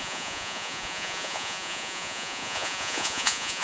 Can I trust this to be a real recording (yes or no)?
no